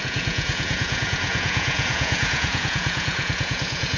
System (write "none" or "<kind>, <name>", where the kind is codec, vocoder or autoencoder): vocoder, Vocos